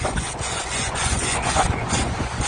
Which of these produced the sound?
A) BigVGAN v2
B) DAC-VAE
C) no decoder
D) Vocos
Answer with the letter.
D